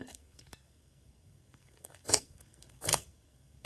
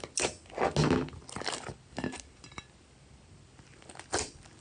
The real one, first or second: second